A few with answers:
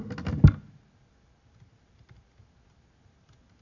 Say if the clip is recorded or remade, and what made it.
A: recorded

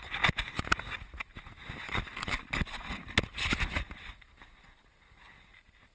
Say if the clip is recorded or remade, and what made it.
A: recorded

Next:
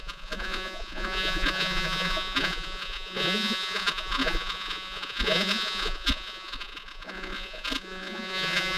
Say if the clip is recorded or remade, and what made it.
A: remade, vocoder, Vocos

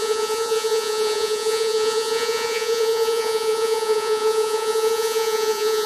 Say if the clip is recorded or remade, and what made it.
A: remade, vocoder, Vocos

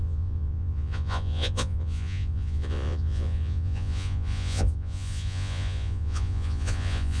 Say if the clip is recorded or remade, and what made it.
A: remade, vocoder, Vocos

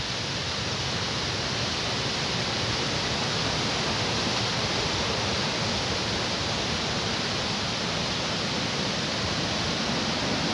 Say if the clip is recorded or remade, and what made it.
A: recorded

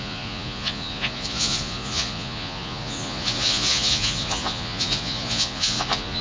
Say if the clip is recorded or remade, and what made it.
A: remade, vocoder, Vocos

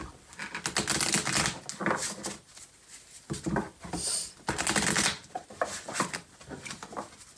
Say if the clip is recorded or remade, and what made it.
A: recorded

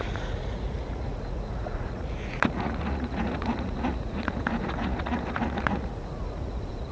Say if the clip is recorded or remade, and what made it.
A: remade, vocoder, Vocos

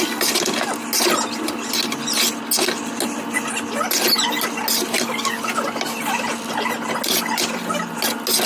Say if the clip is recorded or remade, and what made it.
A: recorded